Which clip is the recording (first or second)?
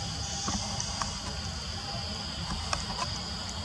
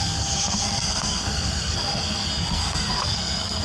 first